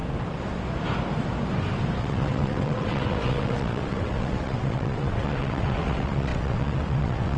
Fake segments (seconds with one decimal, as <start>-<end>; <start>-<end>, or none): 2.0-7.4